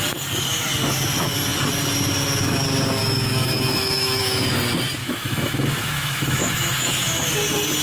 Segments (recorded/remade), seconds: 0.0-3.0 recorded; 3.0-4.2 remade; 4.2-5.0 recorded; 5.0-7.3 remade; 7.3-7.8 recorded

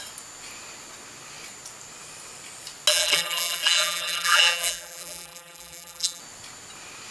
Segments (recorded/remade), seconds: 0.0-2.9 recorded; 2.9-6.2 remade; 6.2-7.1 recorded